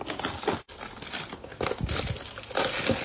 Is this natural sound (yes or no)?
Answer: yes